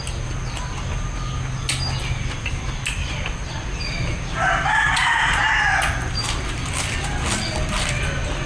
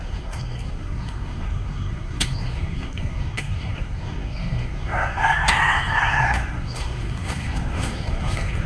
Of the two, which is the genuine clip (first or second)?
first